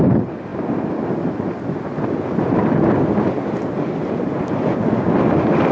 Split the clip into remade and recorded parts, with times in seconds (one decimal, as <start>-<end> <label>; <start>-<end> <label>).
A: 0.0-0.5 remade; 0.5-3.9 recorded; 3.9-5.7 remade